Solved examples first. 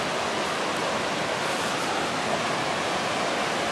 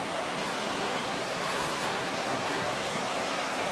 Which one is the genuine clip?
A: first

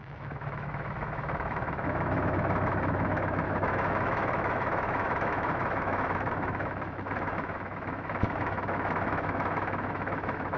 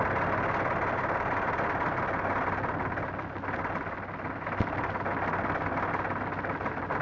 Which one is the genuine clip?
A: second